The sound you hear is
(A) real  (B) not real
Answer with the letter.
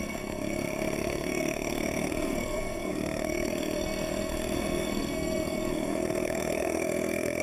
B